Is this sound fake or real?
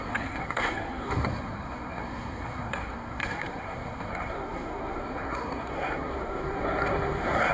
fake